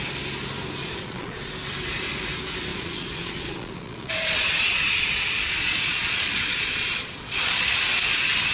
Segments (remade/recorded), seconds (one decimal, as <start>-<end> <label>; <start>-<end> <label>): 0.0-0.8 recorded; 0.8-1.5 remade; 1.5-2.7 recorded; 2.7-7.7 remade; 7.7-8.5 recorded